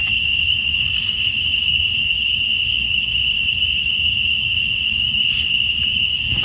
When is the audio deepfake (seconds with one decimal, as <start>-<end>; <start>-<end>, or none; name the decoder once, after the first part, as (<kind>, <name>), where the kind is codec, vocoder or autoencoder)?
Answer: 0.0-6.4 (codec, DAC)